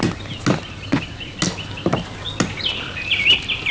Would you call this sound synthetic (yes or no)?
no